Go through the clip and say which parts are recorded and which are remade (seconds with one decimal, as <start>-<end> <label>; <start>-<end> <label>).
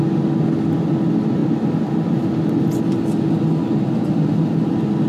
0.0-5.1 recorded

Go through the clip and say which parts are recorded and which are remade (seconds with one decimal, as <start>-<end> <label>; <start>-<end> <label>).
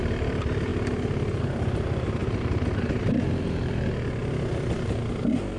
0.0-0.7 remade; 0.7-1.4 recorded; 1.4-4.2 remade; 4.2-5.1 recorded; 5.1-5.6 remade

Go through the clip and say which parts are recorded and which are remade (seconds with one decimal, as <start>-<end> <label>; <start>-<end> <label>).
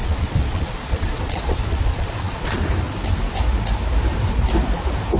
0.0-2.6 remade; 2.6-5.2 recorded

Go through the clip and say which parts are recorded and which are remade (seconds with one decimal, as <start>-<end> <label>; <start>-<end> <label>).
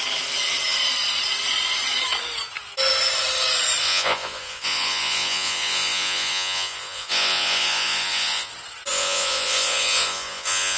0.0-3.8 recorded; 3.8-8.5 remade; 8.5-8.9 recorded; 8.9-10.8 remade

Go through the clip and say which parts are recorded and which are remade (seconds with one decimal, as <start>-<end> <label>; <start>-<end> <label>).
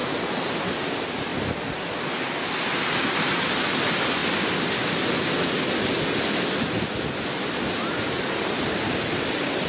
0.0-9.7 recorded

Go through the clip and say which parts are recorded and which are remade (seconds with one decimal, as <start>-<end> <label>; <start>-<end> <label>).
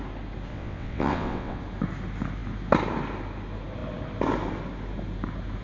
0.0-0.5 recorded; 0.5-1.6 remade; 1.6-5.6 recorded